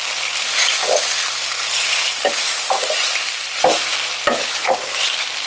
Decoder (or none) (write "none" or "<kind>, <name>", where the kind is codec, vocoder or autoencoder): none